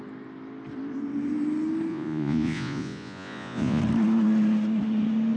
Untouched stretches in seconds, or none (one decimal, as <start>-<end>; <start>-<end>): 0.0-1.9; 3.8-5.4